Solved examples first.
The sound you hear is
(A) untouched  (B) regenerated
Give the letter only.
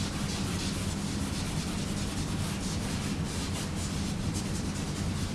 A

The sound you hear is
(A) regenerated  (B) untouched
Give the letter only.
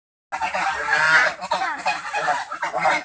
B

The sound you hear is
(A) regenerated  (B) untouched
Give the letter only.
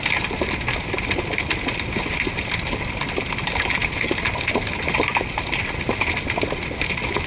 B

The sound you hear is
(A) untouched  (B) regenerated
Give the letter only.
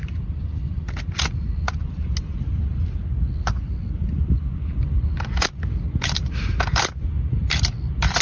A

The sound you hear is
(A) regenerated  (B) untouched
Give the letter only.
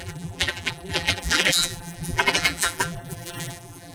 A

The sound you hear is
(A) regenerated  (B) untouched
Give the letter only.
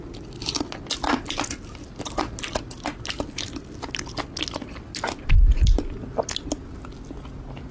B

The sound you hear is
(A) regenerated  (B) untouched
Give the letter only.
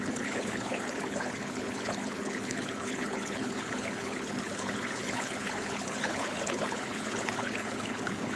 A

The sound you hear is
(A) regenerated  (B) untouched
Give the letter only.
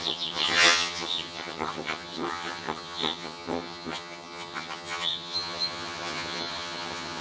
A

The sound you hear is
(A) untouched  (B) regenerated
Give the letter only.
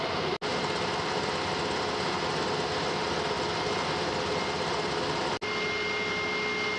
A